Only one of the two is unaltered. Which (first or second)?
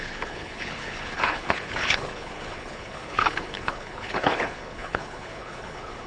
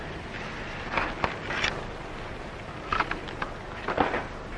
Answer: second